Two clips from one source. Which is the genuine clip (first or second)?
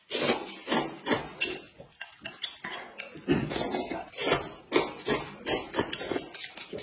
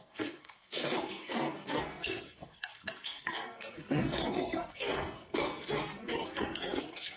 first